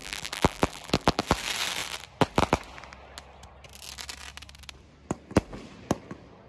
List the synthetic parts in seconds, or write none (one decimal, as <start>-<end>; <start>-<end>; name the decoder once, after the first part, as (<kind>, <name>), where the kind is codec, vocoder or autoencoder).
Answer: 0.0-1.2 (vocoder, BigVGAN v2)